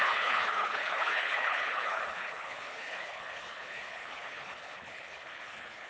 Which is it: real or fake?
fake